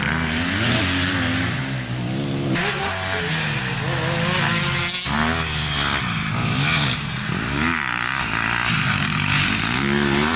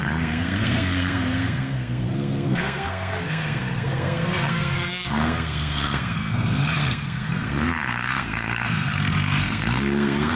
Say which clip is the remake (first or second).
second